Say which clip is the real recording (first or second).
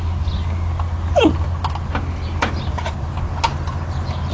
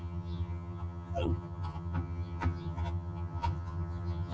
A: first